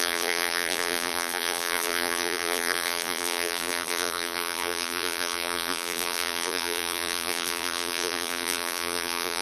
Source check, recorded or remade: remade